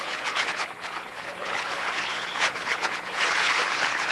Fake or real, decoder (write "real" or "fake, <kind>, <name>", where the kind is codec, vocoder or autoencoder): fake, codec, HILCodec